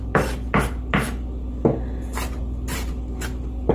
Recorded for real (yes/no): yes